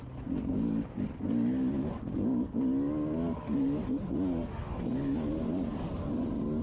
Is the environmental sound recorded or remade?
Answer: recorded